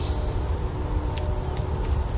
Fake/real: real